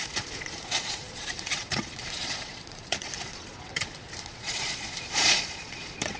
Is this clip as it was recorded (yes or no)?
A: no